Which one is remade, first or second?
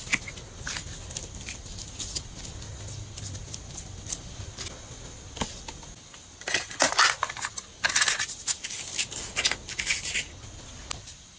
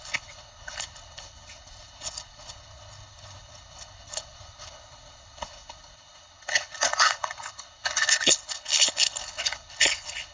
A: second